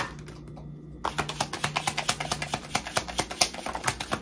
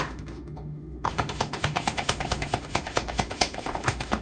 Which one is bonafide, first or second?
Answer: first